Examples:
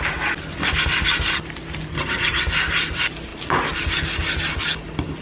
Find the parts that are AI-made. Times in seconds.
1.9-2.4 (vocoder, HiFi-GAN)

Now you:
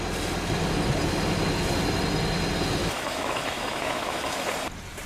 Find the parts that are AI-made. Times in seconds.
2.8-4.5 (autoencoder, DAC-VAE)

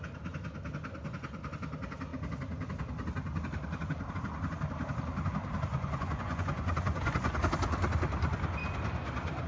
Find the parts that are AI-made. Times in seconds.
5.7-7.4 (vocoder, Vocos)

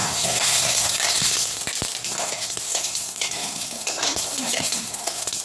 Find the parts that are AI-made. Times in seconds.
0.0-1.6 (codec, SNAC); 2.0-5.4